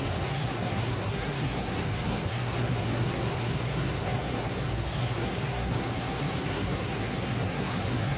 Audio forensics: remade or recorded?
remade